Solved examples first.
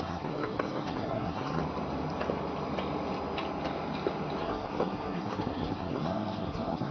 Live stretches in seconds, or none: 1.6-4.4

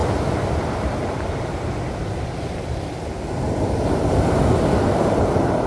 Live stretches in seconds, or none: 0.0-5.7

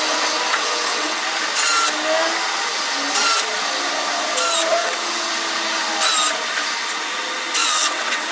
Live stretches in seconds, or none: 0.0-0.5; 1.2-4.8; 5.3-7.6

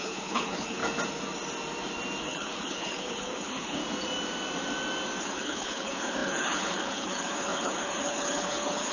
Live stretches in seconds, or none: 0.8-2.2; 3.8-5.2

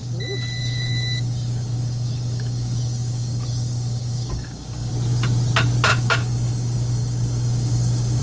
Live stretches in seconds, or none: 4.9-5.9